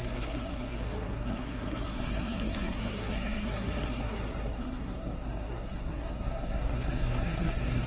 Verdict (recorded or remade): remade